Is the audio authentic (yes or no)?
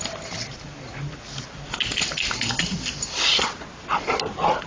yes